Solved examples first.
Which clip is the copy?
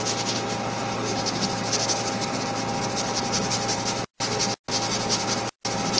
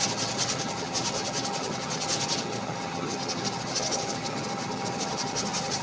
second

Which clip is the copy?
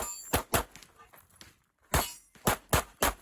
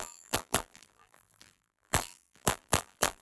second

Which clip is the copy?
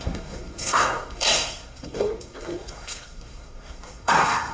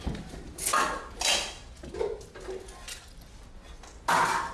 first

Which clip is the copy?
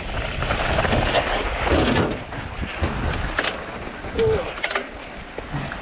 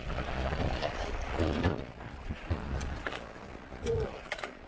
second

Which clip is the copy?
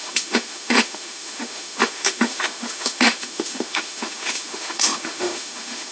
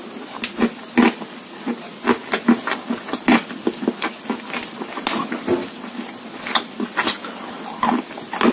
first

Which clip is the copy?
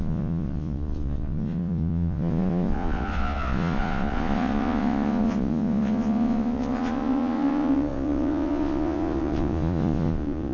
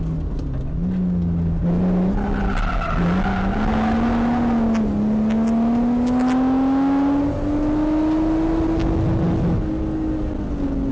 first